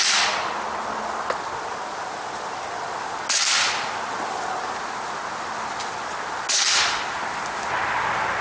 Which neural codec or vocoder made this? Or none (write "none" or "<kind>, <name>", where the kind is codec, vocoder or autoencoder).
none